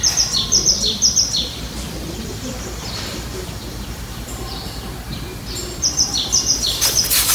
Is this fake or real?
fake